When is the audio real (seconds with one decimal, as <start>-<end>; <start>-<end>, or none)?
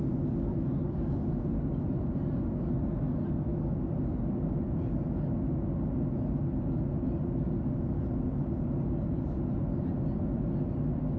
0.0-0.7; 1.9-11.2